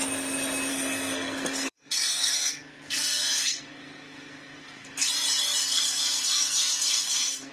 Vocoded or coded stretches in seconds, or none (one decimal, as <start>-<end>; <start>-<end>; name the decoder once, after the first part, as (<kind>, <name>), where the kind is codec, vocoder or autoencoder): 0.7-5.1 (codec, SNAC); 5.6-7.5